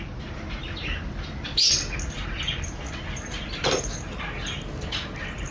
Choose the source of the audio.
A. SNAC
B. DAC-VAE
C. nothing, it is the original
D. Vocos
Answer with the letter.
C